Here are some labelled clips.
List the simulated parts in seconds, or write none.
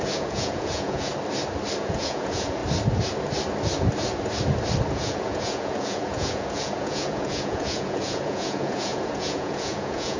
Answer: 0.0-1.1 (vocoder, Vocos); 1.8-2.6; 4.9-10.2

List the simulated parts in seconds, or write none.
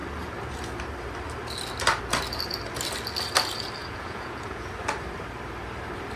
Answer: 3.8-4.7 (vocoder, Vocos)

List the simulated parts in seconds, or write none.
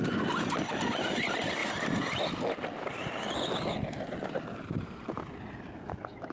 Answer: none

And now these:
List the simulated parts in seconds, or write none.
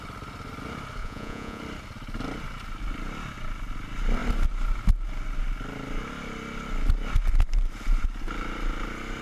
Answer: 1.0-1.6 (vocoder, Vocos)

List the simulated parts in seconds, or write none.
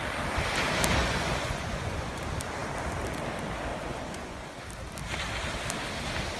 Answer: 1.0-2.2 (vocoder, Vocos); 3.7-4.6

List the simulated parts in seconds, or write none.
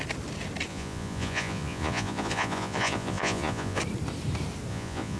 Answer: 0.7-3.8 (vocoder, Vocos); 4.7-5.2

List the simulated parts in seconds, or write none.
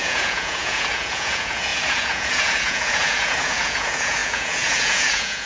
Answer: 0.0-5.5 (vocoder, Vocos)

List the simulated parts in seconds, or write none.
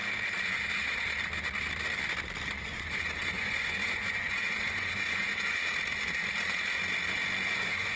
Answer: 2.6-5.6 (vocoder, Vocos); 7.5-8.0